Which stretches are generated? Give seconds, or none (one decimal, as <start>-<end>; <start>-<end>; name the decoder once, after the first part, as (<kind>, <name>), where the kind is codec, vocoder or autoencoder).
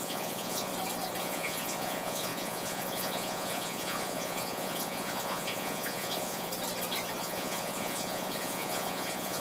0.0-0.7 (vocoder, Vocos); 1.2-6.5; 7.2-9.4